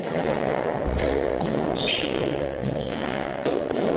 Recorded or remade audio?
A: remade